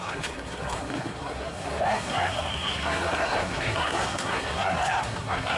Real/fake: fake